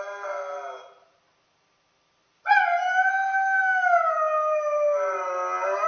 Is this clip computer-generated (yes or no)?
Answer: no